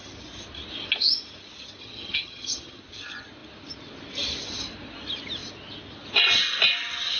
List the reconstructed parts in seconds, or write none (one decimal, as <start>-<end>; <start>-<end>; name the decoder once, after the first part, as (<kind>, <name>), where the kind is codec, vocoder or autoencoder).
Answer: 1.8-2.8 (vocoder, HiFi-GAN)